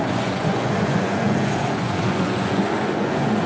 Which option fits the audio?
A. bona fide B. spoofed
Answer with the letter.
B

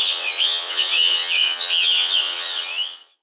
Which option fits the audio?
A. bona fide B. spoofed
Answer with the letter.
B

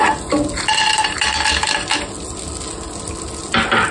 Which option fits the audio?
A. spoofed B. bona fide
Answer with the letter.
B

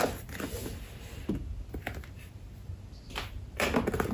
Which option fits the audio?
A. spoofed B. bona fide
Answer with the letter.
B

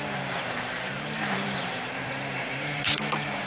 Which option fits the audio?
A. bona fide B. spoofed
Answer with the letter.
B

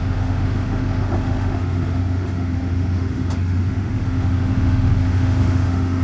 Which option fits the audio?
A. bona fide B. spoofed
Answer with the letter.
B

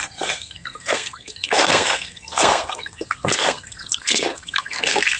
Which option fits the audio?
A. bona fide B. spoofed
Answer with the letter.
B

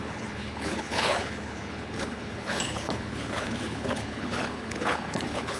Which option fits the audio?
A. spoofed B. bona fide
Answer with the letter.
A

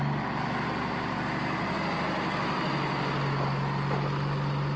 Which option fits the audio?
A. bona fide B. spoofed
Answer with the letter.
A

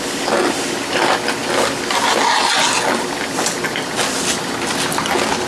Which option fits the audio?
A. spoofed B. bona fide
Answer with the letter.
B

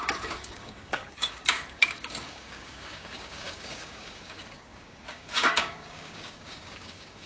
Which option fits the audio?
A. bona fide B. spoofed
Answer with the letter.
B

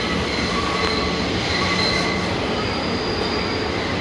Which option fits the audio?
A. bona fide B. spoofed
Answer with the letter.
A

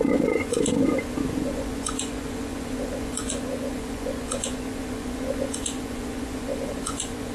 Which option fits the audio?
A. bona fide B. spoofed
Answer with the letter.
B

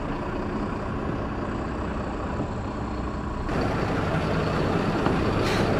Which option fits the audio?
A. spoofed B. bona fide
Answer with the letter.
B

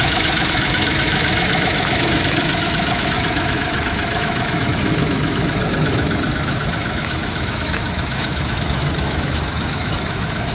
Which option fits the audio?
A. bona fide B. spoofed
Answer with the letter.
B